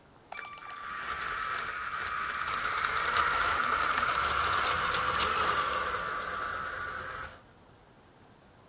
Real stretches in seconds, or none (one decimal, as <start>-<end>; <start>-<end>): 0.0-8.7